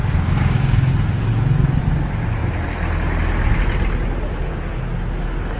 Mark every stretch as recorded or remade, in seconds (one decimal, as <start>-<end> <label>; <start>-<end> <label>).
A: 0.0-0.9 remade; 0.9-5.6 recorded